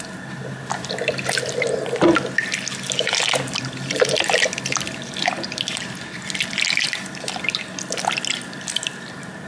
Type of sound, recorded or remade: recorded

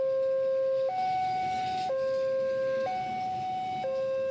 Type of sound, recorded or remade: recorded